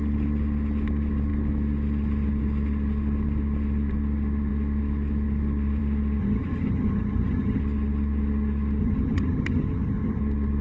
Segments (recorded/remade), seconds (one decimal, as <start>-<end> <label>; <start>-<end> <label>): 0.0-6.2 recorded; 6.2-7.6 remade; 7.6-8.8 recorded; 8.8-10.2 remade; 10.2-10.6 recorded